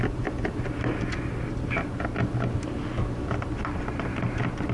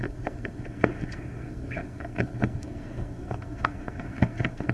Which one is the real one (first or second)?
first